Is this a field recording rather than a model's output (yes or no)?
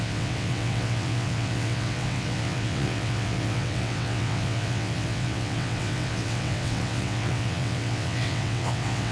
no